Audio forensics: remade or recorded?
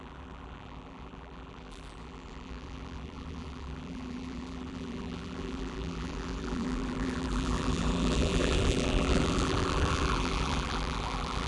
remade